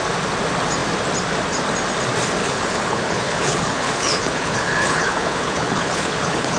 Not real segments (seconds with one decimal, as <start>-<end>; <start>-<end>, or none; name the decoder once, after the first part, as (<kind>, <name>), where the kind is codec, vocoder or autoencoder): 2.4-6.6 (codec, HILCodec)